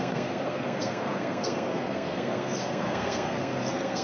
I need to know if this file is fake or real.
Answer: fake